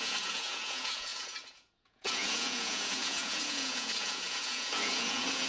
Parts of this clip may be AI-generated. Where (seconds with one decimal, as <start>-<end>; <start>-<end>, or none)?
0.0-5.5